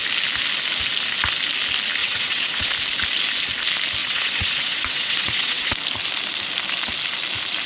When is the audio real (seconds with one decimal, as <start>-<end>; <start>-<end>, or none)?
0.0-2.0; 2.7-4.0; 5.7-7.7